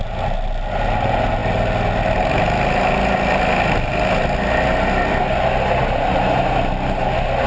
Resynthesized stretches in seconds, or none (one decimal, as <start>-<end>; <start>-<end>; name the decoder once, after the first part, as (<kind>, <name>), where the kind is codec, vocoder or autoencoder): none